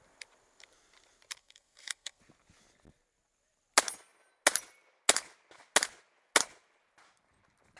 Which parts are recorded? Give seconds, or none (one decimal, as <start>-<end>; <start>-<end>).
0.0-1.4; 2.2-7.8